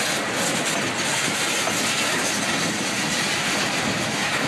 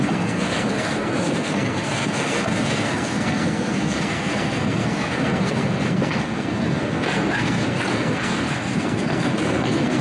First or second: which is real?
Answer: first